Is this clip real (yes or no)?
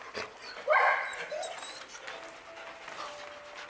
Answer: yes